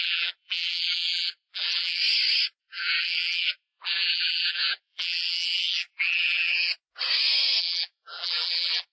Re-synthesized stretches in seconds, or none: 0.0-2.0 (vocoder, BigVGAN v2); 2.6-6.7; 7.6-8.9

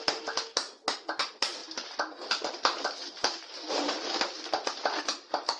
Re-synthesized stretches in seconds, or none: none

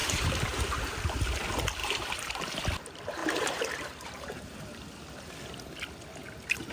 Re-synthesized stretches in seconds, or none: 0.0-0.7 (vocoder, BigVGAN v2); 1.8-2.3; 3.2-4.6

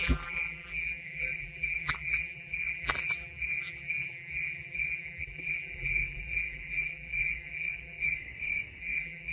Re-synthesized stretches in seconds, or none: 0.0-8.2 (vocoder, BigVGAN v2); 8.8-9.3

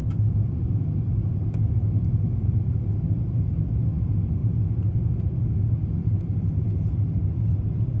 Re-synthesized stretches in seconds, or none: none

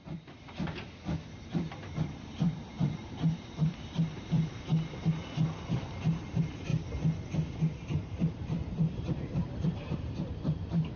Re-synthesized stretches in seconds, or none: 1.3-4.7 (vocoder, BigVGAN v2); 5.7-6.7; 7.5-11.0

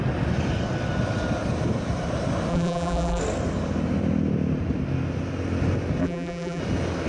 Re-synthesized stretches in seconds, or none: 2.5-3.2 (vocoder, BigVGAN v2); 6.0-6.6